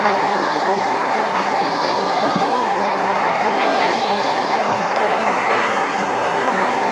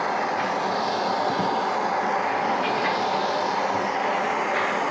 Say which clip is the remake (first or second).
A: first